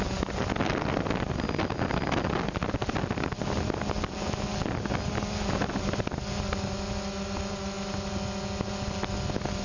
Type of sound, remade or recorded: recorded